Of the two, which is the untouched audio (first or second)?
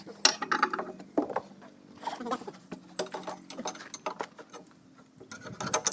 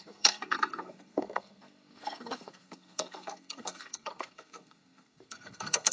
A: first